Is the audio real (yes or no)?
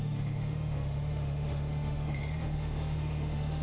no